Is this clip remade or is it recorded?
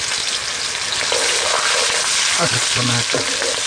recorded